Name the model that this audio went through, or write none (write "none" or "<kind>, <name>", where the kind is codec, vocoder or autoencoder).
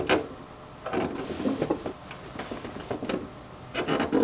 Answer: none